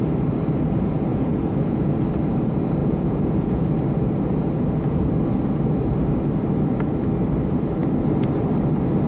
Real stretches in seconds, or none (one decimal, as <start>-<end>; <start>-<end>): 0.0-1.1; 1.9-2.8; 3.7-9.1